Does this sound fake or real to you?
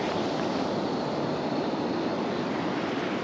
real